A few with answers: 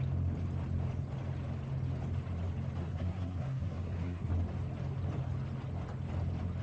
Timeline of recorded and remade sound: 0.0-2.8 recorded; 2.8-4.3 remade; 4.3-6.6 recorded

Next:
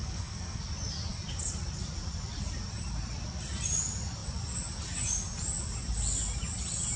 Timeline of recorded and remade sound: 0.0-0.6 remade; 0.6-7.0 recorded

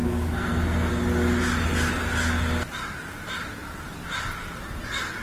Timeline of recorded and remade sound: 0.0-0.9 remade; 0.9-5.2 recorded